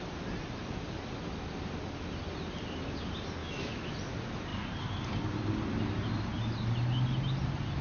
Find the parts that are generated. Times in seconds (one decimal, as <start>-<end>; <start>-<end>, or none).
3.4-3.9